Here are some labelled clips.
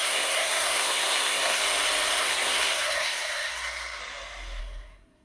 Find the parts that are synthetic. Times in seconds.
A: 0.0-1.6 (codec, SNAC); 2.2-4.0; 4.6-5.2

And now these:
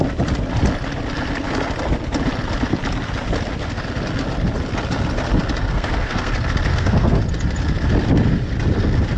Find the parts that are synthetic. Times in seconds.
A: 5.7-6.3 (codec, SNAC); 6.7-7.2

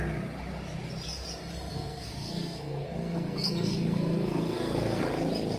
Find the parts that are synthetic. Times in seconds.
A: 1.7-5.0 (codec, SNAC)

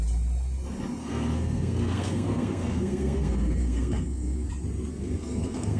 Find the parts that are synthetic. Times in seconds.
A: 1.0-4.5 (codec, SNAC); 4.9-5.8